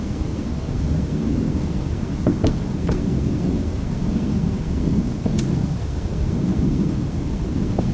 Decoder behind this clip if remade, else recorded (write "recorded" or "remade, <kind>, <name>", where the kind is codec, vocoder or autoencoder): remade, codec, SNAC